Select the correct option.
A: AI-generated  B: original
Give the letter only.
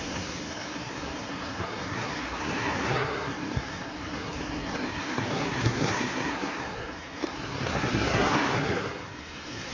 A